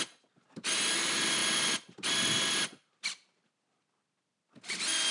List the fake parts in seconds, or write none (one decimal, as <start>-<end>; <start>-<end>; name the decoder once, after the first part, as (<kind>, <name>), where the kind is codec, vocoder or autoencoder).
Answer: none